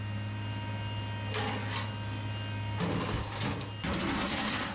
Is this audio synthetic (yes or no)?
no